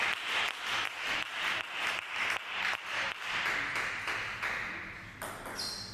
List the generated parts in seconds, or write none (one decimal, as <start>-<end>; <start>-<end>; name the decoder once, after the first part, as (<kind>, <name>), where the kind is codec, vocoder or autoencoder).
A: none